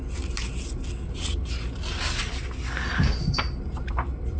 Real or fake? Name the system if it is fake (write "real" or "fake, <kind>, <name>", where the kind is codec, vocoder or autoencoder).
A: real